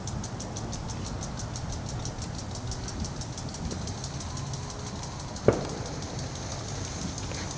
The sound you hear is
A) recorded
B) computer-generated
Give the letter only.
A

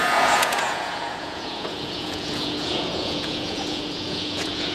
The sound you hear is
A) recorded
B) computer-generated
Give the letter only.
B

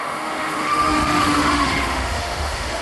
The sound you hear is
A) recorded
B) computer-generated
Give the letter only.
B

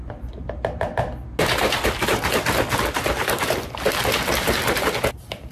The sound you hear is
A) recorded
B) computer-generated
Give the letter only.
A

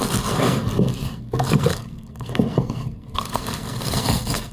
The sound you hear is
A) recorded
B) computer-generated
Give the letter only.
B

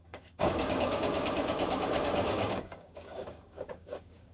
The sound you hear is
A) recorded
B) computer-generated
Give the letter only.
B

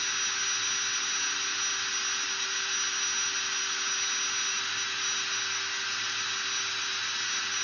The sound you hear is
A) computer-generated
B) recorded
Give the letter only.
B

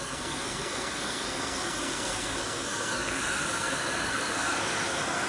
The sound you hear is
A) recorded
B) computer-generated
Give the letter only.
B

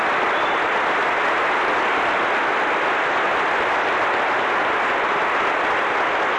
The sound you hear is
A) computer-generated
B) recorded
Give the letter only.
B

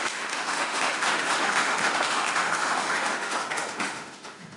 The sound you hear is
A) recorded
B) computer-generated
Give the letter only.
B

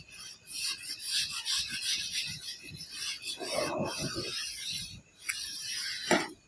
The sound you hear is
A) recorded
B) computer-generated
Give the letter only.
A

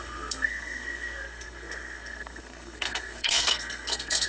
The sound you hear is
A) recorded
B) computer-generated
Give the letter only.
B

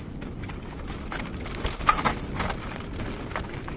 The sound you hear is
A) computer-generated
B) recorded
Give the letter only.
B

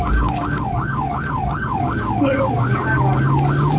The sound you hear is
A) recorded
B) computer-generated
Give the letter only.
B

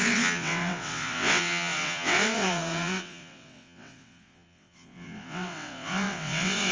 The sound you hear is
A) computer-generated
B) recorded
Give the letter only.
A